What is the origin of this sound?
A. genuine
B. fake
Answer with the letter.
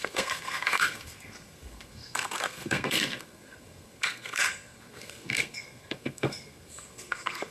B